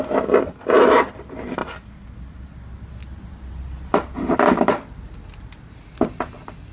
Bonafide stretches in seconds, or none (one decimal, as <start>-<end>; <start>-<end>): 0.0-6.7